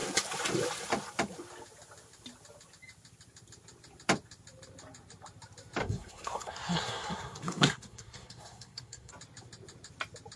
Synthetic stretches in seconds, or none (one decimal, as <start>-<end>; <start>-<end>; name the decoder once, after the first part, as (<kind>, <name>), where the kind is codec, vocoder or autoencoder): 5.8-9.1 (codec, SNAC)